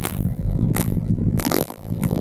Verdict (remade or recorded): remade